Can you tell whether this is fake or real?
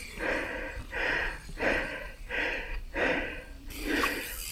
fake